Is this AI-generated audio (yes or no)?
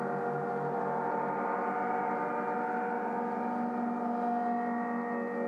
no